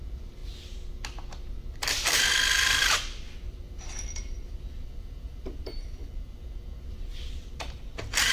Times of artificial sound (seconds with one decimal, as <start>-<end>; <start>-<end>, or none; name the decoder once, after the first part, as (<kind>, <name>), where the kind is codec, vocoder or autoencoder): 0.0-6.0 (vocoder, BigVGAN v2); 6.8-8.3

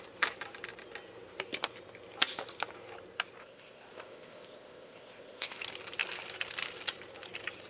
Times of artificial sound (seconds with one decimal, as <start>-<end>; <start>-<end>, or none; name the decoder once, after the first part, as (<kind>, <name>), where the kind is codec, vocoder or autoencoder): 3.4-5.6 (codec, ZipCodec)

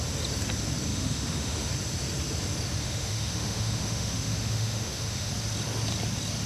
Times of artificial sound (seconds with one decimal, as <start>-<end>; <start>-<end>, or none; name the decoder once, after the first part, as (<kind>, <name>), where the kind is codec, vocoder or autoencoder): 0.9-1.7 (autoencoder, DAC-VAE); 2.8-5.3

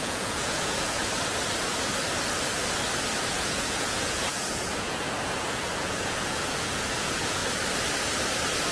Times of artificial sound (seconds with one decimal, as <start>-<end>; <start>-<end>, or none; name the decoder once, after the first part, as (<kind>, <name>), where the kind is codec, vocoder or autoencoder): 0.0-1.0 (vocoder, Vocos); 3.3-7.4